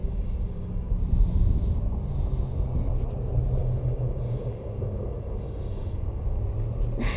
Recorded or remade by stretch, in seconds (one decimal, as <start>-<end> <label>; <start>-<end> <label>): 0.0-0.9 remade; 0.9-3.6 recorded; 3.6-6.4 remade; 6.4-7.2 recorded